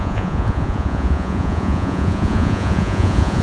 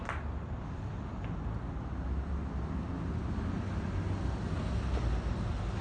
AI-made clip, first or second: first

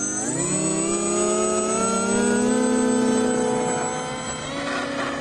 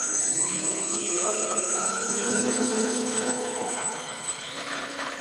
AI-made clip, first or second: second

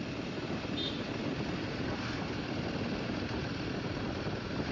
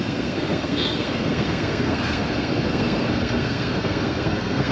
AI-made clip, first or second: second